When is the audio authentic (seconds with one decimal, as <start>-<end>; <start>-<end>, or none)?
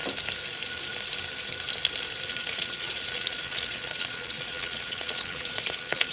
0.0-2.3